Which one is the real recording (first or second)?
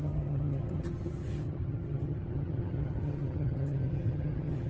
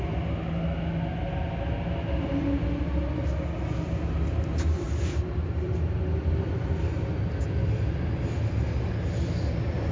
second